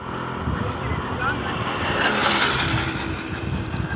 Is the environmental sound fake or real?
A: real